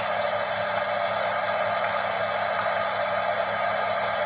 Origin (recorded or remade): recorded